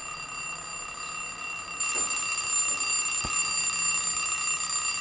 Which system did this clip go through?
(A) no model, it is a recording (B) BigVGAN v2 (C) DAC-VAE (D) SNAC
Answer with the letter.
A